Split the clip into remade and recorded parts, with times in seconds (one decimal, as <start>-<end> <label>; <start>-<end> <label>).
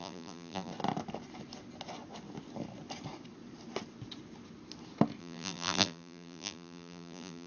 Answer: 0.0-0.7 remade; 0.7-5.2 recorded; 5.2-7.5 remade